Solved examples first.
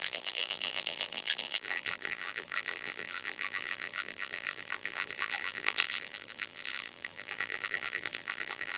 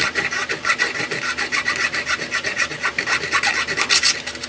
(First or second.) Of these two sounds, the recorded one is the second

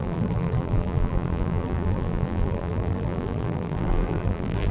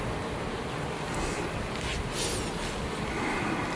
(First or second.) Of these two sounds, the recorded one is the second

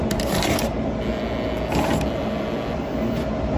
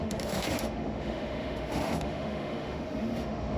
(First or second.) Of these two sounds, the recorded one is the first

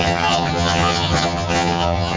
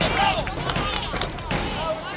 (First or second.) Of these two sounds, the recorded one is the second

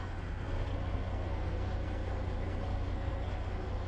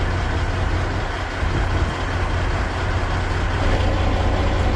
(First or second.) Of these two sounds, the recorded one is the second